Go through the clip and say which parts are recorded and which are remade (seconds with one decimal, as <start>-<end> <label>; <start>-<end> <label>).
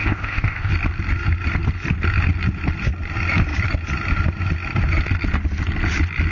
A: 0.0-0.7 remade; 0.7-6.3 recorded